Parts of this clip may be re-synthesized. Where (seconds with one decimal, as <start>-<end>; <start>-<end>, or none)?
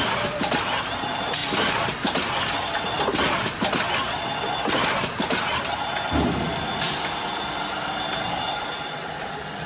none